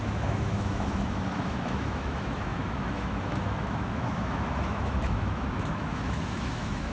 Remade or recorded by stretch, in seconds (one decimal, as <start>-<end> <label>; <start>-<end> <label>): 0.0-6.9 remade